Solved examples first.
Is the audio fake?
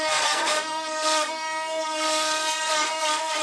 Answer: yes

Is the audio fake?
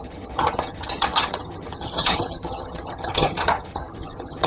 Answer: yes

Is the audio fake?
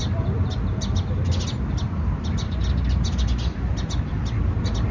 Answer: no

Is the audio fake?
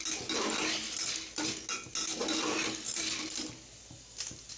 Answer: no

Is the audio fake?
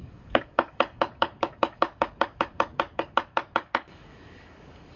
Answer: yes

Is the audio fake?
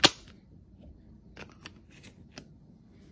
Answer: no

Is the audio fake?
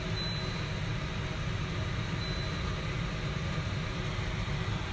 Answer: no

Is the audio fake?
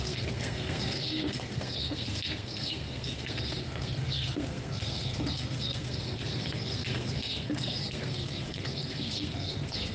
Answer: yes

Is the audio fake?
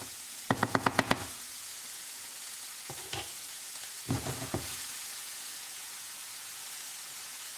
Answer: yes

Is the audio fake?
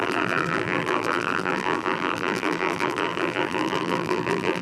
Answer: yes